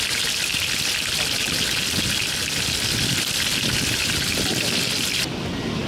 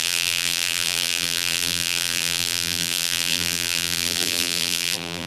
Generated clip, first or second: second